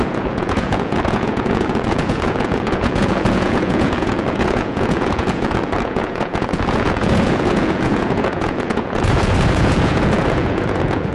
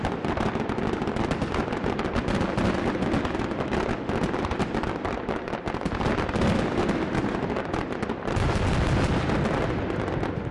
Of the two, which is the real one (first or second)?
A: second